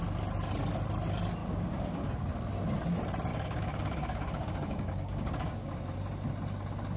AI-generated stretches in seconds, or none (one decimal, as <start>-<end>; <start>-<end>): 1.4-2.3; 3.3-5.7